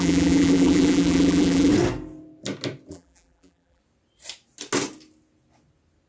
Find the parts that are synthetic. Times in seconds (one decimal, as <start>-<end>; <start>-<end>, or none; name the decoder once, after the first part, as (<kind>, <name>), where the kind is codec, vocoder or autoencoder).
0.0-1.7 (vocoder, BigVGAN v2); 2.9-3.8